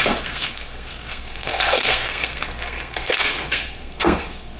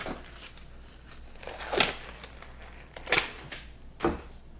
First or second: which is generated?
first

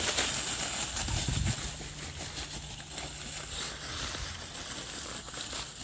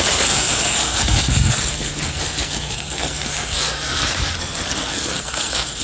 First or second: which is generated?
second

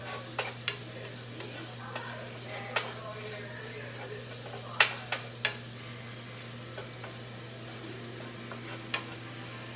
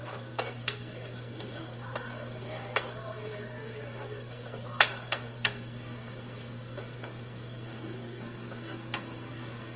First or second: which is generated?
second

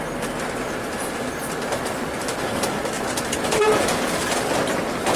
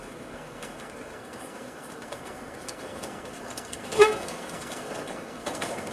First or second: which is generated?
second